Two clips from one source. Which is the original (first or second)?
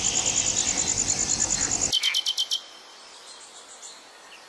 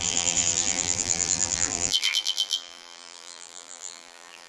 first